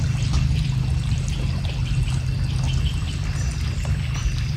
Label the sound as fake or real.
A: real